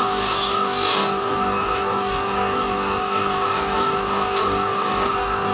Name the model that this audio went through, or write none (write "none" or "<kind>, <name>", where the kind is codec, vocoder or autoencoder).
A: codec, DAC